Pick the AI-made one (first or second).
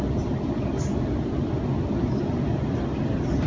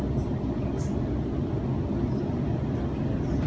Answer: first